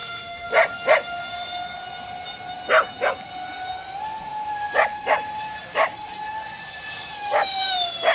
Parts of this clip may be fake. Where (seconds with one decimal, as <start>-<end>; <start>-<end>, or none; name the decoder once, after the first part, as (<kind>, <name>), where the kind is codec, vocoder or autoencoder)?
0.0-0.5 (autoencoder, DAC-VAE)